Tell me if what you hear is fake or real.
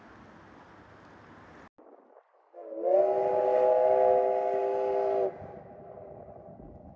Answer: real